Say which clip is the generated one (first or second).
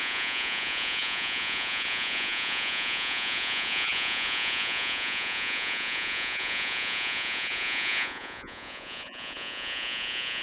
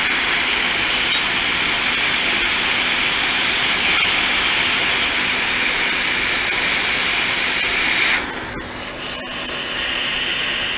first